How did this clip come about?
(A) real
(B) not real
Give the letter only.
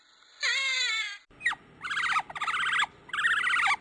A